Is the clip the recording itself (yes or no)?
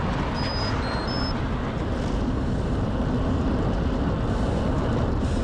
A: yes